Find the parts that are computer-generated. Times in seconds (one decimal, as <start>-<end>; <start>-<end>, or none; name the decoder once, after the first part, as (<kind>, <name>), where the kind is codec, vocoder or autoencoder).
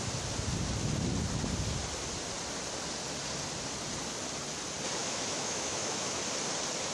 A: 5.0-6.2 (autoencoder, DAC-VAE)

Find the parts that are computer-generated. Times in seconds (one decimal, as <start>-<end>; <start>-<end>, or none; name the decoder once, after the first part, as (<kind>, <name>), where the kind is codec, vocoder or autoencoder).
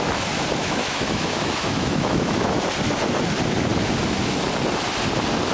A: 0.6-2.6 (autoencoder, DAC-VAE)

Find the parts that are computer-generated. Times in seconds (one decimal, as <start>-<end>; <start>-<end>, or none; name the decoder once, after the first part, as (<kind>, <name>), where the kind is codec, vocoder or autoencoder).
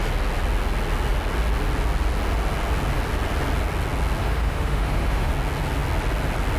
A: 4.2-5.3 (autoencoder, DAC-VAE)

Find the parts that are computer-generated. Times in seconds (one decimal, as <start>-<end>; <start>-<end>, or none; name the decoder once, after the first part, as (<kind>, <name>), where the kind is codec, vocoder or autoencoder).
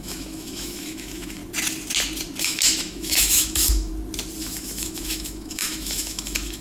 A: 0.0-1.4 (autoencoder, DAC-VAE); 2.4-3.9; 4.4-6.6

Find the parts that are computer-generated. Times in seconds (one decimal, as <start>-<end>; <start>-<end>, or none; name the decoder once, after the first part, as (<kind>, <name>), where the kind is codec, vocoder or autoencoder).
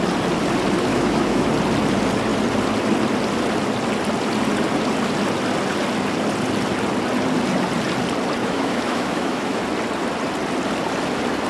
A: 0.9-1.5 (autoencoder, DAC-VAE); 8.4-9.6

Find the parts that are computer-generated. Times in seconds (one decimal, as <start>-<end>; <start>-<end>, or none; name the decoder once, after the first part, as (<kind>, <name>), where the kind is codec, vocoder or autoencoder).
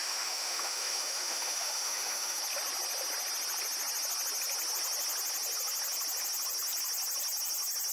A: 0.0-2.4 (autoencoder, DAC-VAE)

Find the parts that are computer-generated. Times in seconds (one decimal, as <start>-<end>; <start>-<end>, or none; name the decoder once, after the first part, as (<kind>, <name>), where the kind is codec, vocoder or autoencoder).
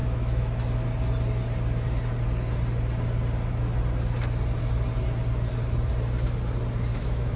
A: 0.0-0.6 (autoencoder, DAC-VAE); 6.9-7.4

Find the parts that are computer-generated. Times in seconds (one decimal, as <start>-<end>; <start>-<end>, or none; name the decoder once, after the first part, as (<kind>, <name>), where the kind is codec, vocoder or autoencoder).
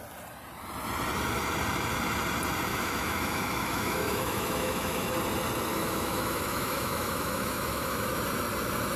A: 2.7-5.1 (autoencoder, DAC-VAE); 5.7-8.2